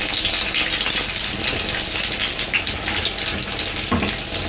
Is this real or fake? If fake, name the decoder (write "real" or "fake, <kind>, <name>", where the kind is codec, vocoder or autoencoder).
real